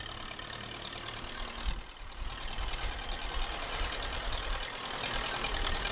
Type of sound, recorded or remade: recorded